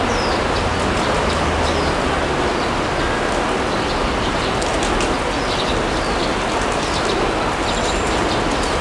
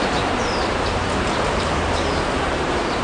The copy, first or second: second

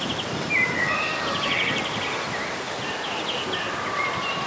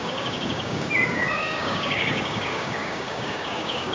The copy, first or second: second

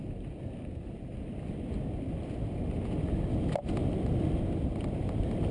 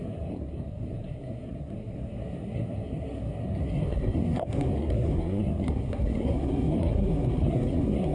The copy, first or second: second